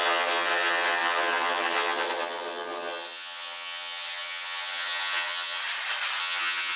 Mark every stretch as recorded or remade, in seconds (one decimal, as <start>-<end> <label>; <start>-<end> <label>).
0.0-5.6 remade; 5.6-6.2 recorded; 6.2-6.8 remade